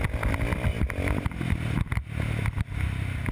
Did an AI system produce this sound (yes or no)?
no